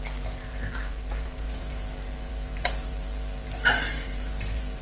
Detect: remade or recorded remade